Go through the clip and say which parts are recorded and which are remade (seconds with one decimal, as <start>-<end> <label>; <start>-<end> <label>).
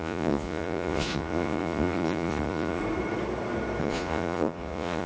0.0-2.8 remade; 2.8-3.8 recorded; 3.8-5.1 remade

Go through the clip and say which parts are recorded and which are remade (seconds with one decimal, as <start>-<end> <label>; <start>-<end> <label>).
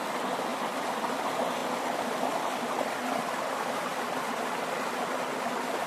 0.0-0.5 recorded; 0.5-1.2 remade; 1.2-3.9 recorded; 3.9-4.4 remade; 4.4-5.9 recorded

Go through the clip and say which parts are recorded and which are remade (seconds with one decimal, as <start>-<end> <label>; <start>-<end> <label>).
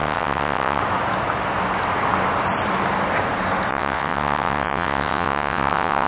0.0-0.8 remade; 0.8-3.7 recorded; 3.7-6.1 remade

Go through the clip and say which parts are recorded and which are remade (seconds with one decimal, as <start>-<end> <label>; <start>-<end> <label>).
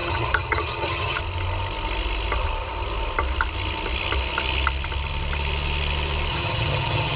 0.0-1.2 remade; 1.2-6.3 recorded; 6.3-7.2 remade